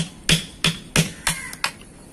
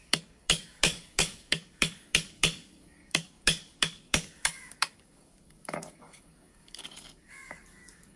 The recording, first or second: first